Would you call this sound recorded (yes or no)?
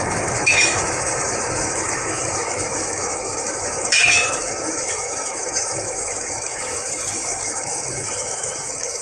no